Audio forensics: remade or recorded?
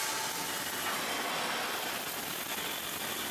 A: recorded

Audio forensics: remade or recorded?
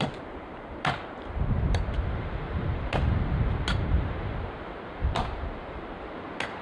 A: remade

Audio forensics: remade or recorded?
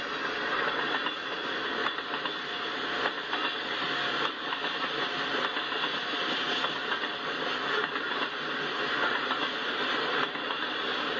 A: recorded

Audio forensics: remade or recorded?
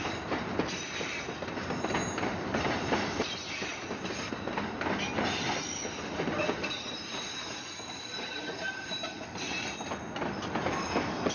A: recorded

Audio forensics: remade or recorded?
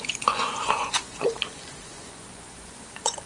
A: remade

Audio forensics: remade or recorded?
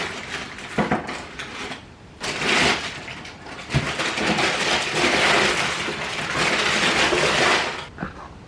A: recorded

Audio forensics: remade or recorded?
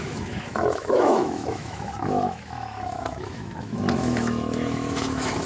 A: remade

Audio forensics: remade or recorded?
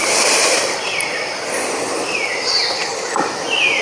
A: recorded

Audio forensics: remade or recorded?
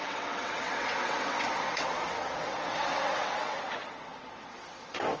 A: remade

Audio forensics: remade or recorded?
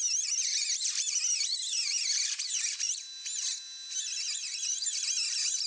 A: recorded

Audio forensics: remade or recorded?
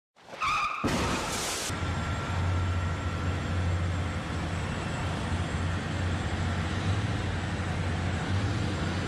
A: recorded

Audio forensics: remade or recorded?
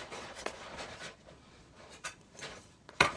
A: remade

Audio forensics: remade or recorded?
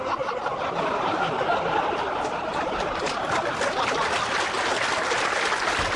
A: recorded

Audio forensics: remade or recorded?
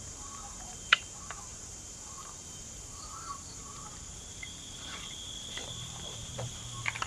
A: remade